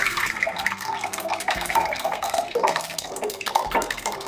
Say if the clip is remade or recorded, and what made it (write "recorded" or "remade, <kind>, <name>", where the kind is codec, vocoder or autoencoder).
remade, codec, SNAC